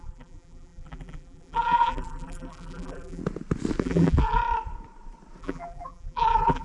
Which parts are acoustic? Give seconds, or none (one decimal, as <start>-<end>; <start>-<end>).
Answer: 3.2-3.8; 4.4-5.4